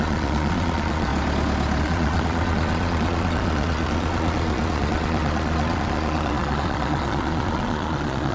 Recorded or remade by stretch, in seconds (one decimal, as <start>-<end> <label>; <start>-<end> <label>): 0.0-1.1 remade; 1.1-1.8 recorded; 1.8-8.3 remade